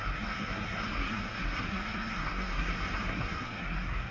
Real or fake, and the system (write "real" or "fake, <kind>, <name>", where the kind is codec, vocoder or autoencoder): fake, codec, SNAC